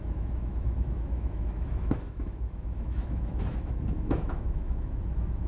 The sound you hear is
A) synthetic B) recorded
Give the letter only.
A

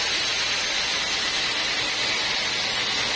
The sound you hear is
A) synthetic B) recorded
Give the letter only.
B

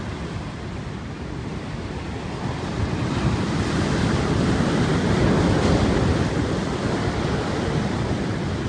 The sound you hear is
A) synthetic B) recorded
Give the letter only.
B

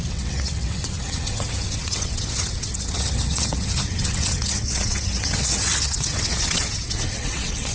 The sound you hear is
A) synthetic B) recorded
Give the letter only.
A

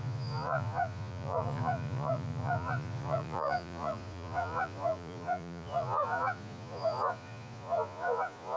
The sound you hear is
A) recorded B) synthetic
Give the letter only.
B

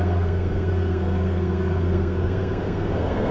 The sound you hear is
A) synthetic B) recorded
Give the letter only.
A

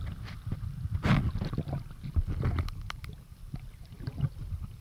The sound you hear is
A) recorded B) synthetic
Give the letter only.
A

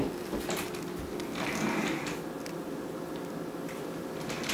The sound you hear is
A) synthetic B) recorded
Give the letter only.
B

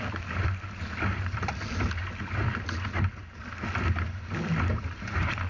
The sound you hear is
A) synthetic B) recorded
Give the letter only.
B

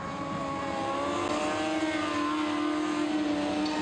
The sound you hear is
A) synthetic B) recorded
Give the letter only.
B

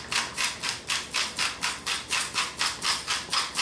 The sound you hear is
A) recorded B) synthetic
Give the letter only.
A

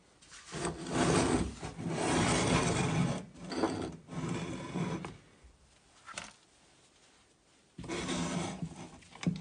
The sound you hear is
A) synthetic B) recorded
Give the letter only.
B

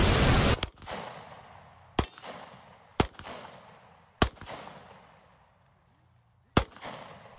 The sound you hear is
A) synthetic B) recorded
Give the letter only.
B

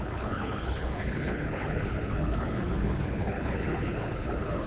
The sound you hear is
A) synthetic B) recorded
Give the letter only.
A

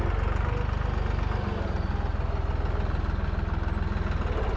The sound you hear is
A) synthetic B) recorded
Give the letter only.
B